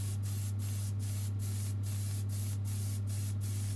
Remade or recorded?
recorded